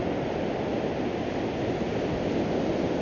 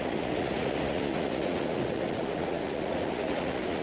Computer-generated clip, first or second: second